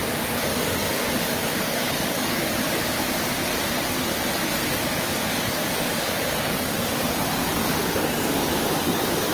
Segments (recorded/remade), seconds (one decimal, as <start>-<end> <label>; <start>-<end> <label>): 0.0-2.4 remade; 2.4-4.1 recorded; 4.1-6.8 remade; 6.8-7.6 recorded; 7.6-9.3 remade